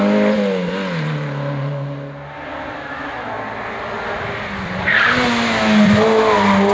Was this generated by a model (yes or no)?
no